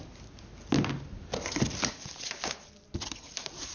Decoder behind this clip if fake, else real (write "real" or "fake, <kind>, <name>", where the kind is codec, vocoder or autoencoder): real